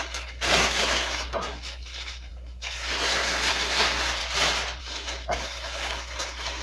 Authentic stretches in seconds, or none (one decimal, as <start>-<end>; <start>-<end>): 4.2-4.8